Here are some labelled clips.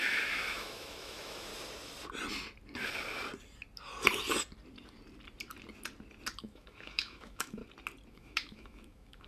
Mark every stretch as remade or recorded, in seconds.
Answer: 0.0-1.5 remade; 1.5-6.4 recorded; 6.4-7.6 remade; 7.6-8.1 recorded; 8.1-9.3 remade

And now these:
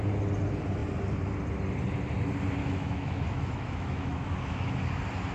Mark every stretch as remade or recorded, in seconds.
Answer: 0.0-2.6 recorded; 2.6-4.7 remade; 4.7-5.3 recorded

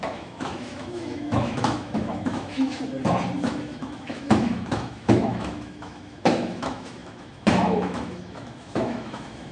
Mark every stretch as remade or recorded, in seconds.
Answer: 0.0-2.9 remade; 2.9-3.4 recorded; 3.4-9.5 remade

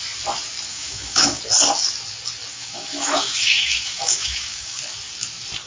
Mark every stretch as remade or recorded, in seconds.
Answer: 0.0-0.7 recorded; 0.7-1.4 remade; 1.4-2.5 recorded; 2.5-4.8 remade; 4.8-5.7 recorded

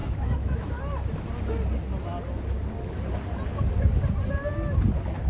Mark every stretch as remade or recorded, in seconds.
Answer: 0.0-0.8 remade; 0.8-5.3 recorded

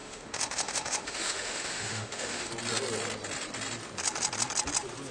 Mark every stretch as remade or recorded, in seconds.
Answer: 0.0-2.5 remade; 2.5-5.1 recorded

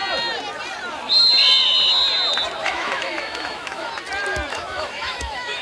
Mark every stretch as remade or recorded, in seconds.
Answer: 0.0-2.6 recorded; 2.6-3.9 remade; 3.9-4.5 recorded; 4.5-5.6 remade

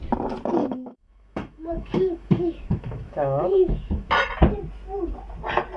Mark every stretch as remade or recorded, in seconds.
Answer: 0.0-0.6 recorded; 0.6-4.1 remade; 4.1-5.8 recorded